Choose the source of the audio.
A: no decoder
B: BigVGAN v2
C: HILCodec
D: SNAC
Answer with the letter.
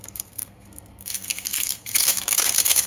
D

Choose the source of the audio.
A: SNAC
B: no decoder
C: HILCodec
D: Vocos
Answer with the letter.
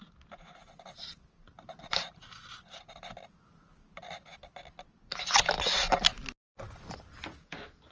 B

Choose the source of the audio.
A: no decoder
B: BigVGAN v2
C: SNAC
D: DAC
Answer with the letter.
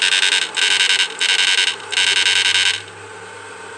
A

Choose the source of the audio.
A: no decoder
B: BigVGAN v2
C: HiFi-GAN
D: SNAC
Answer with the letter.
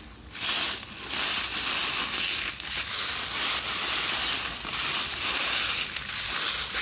A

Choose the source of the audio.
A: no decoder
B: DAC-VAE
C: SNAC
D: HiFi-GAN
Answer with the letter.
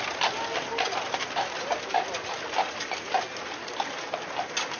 A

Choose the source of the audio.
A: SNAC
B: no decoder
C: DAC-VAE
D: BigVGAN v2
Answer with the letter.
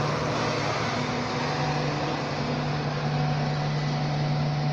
B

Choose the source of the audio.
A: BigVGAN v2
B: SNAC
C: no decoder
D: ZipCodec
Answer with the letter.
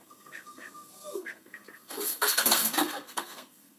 B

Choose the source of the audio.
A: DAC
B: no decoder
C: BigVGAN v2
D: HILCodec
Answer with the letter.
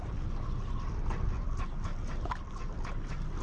B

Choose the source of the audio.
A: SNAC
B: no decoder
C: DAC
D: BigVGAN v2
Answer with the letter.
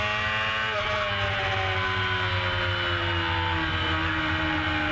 B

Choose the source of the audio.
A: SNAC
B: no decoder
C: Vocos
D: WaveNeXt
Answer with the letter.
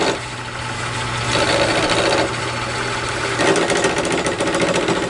B